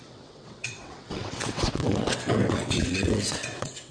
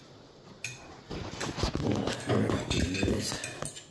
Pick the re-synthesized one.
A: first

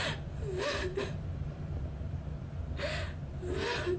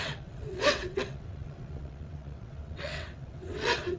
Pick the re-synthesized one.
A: second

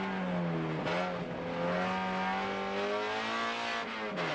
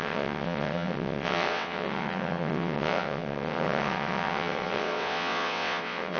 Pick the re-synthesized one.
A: second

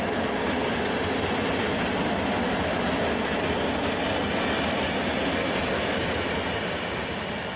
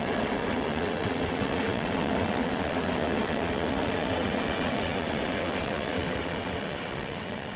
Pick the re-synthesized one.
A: second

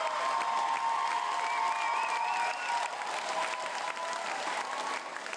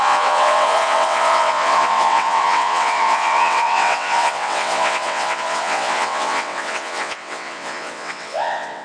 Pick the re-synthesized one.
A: second